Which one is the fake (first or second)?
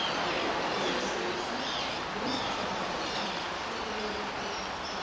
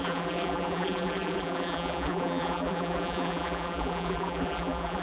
second